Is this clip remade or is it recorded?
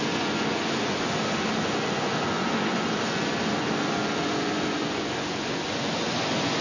remade